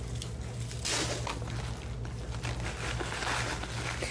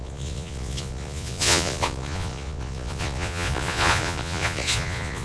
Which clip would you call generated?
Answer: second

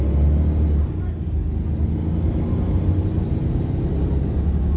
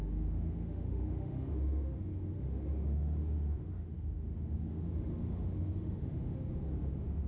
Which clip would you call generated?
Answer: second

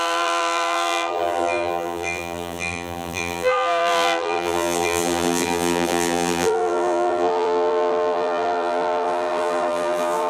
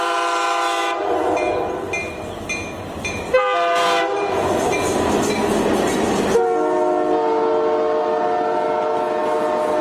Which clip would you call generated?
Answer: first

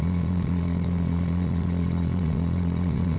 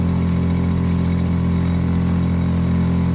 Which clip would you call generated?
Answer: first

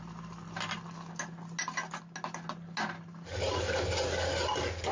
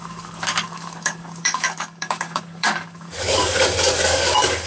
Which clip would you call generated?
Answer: second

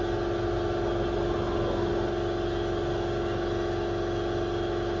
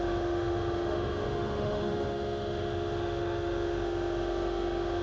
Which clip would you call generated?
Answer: second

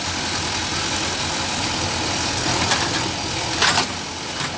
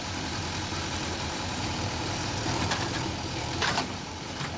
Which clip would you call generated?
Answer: second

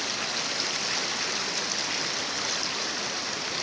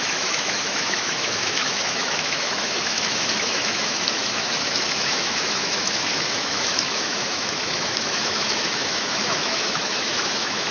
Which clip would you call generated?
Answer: second